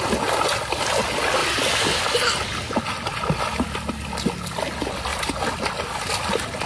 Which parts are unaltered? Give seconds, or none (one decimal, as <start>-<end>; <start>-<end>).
0.0-1.4; 3.2-5.1